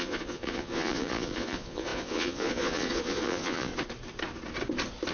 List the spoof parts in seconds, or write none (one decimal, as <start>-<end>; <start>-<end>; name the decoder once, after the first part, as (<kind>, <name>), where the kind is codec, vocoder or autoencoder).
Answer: 0.0-3.7 (vocoder, Vocos)